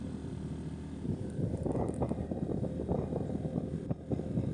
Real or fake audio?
real